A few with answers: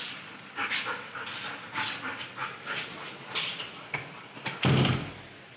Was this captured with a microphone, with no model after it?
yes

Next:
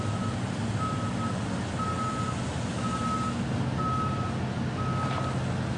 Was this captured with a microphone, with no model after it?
yes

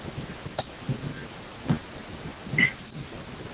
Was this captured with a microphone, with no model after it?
yes